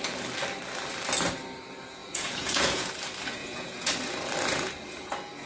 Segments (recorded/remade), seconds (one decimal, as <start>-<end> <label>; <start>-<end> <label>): 0.0-2.0 recorded; 2.0-2.9 remade; 2.9-3.4 recorded; 3.4-3.9 remade; 3.9-5.5 recorded